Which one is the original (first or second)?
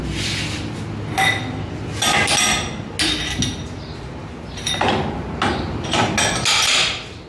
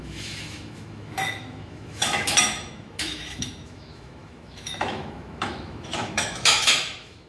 first